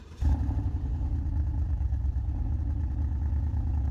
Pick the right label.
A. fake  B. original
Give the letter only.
A